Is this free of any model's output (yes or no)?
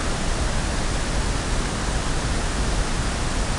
yes